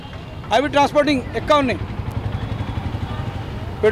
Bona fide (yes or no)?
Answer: yes